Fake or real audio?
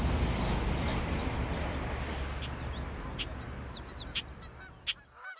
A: real